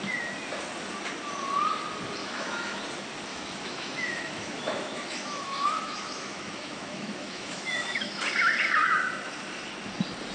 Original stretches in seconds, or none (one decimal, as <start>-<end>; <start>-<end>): 0.0-2.2; 2.8-3.3; 8.1-10.3